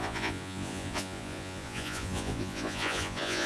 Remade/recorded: remade